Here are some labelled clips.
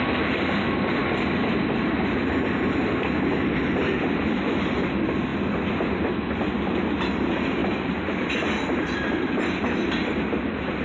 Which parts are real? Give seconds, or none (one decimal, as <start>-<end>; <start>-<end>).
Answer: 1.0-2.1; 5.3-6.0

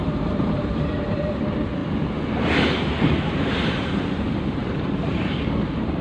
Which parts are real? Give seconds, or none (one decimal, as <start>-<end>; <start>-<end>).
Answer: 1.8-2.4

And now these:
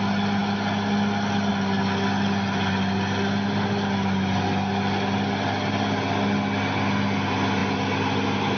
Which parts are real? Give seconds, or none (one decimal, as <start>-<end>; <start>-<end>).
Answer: 0.0-8.6